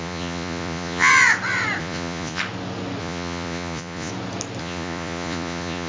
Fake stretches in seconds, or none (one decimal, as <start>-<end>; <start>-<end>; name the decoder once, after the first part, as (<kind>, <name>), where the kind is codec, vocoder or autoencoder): 0.0-1.1 (vocoder, Vocos); 1.8-2.4; 3.0-4.1; 4.6-5.9